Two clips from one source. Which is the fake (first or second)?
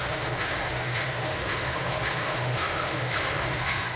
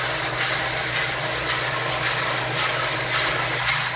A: first